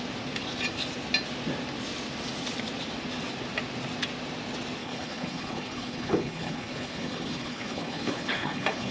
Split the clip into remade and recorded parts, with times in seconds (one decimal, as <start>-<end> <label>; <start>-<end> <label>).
0.0-4.8 recorded; 4.8-8.9 remade